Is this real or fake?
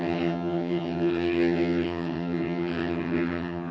fake